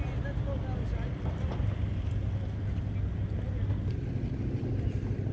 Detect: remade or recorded recorded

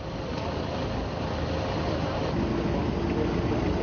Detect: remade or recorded recorded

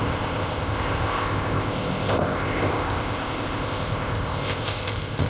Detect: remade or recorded remade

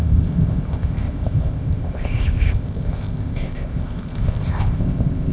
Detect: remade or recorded remade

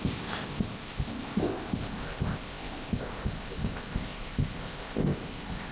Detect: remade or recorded remade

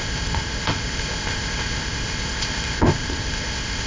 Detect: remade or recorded remade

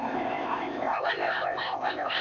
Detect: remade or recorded remade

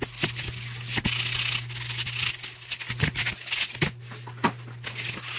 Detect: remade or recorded recorded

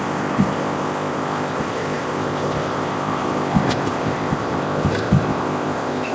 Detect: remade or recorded remade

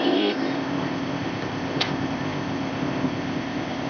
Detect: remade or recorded remade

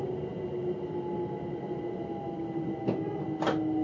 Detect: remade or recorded recorded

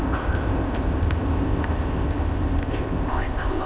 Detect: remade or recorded remade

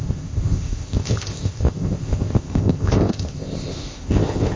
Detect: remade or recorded remade